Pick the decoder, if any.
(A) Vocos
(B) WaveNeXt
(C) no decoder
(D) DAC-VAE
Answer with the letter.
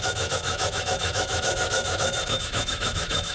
D